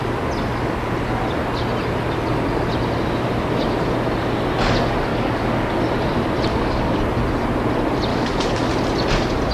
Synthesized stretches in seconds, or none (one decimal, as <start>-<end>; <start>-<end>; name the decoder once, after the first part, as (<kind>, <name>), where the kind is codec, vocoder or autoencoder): 5.1-5.7 (codec, DAC); 6.5-7.0; 8.1-8.7